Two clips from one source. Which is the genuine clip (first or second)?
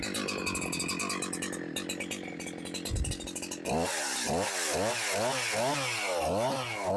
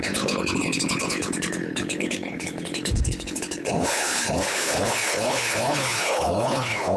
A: first